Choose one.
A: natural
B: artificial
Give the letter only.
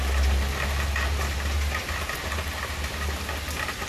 A